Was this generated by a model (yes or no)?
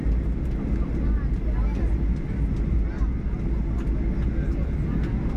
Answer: no